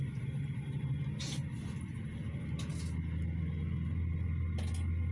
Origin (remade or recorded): recorded